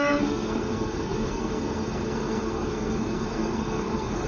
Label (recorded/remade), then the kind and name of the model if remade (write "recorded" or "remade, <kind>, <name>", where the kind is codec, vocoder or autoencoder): remade, codec, SNAC